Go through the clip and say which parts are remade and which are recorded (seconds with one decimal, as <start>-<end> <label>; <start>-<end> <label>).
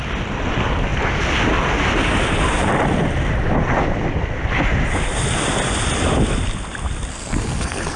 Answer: 0.0-7.1 recorded; 7.1-8.0 remade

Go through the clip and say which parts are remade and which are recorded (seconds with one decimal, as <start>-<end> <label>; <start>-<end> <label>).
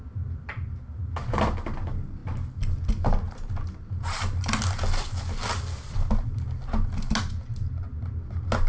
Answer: 0.0-8.7 recorded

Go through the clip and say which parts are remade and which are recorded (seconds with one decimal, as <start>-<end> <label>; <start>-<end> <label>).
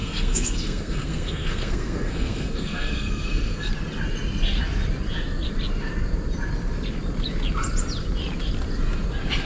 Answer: 0.0-3.7 remade; 3.7-9.4 recorded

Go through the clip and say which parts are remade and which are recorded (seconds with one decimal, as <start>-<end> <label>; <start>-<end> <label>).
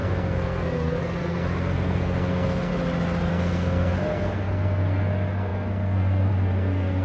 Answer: 0.0-2.7 remade; 2.7-3.3 recorded; 3.3-7.0 remade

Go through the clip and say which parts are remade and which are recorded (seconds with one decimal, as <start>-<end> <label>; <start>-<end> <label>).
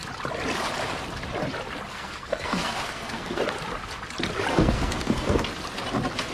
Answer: 0.0-1.9 recorded; 1.9-3.4 remade; 3.4-4.5 recorded; 4.5-5.4 remade; 5.4-6.3 recorded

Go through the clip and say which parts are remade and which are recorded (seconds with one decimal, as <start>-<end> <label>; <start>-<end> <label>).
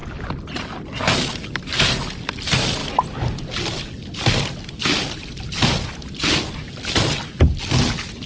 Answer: 0.0-8.3 recorded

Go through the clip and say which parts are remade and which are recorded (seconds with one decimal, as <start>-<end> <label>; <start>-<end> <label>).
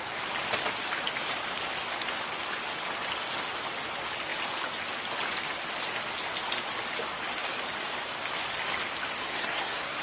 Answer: 0.0-9.3 recorded; 9.3-10.0 remade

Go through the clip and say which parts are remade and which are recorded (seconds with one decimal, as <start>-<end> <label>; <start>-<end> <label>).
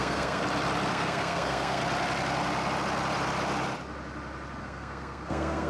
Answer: 0.0-0.4 remade; 0.4-0.9 recorded; 0.9-1.8 remade; 1.8-4.6 recorded; 4.6-5.7 remade